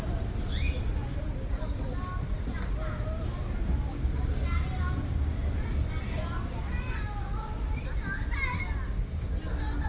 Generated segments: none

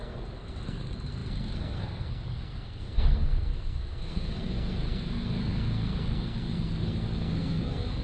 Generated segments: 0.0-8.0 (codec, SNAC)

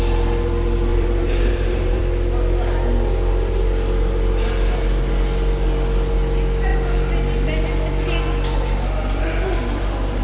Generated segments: 0.9-2.0 (vocoder, BigVGAN v2)

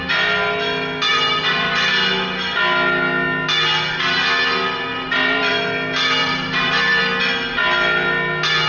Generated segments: 1.1-1.9 (vocoder, BigVGAN v2); 4.9-5.5; 6.2-7.0

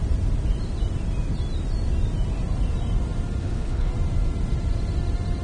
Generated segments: 3.4-3.9 (codec, HILCodec)

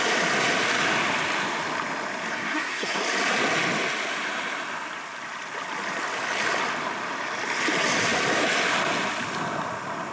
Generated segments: 2.3-3.0 (codec, SNAC)

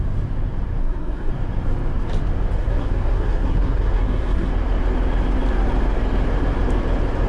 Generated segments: 0.8-1.3 (codec, SNAC); 2.6-4.5